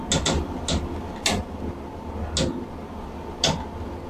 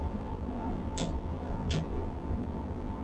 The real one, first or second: first